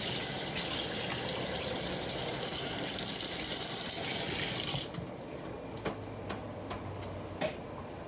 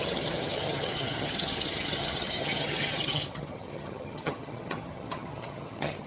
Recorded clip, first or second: first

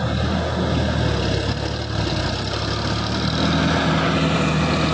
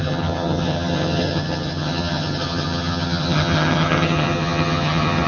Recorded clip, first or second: first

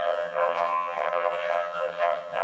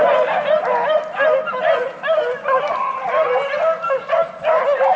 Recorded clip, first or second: second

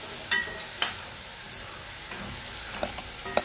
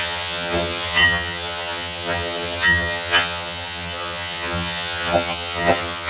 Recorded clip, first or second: first